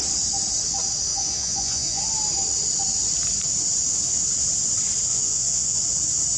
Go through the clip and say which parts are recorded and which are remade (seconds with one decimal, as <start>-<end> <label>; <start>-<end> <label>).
0.0-1.1 recorded; 1.1-2.0 remade; 2.0-5.1 recorded; 5.1-5.8 remade; 5.8-6.4 recorded